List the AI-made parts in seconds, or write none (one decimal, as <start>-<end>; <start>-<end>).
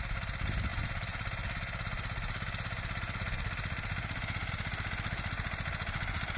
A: none